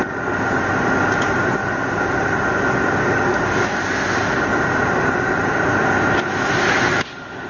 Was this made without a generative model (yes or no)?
yes